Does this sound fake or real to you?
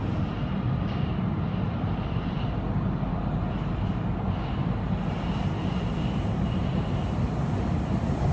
real